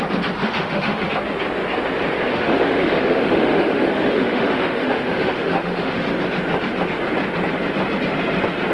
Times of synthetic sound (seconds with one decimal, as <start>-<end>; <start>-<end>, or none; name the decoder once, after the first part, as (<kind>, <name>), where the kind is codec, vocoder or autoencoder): 0.4-1.1 (autoencoder, DAC-VAE); 2.3-6.0